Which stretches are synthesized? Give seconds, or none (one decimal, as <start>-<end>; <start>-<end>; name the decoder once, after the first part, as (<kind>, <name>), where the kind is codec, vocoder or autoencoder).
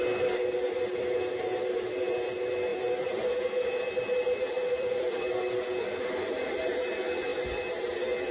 2.7-3.3 (vocoder, BigVGAN v2); 4.4-5.3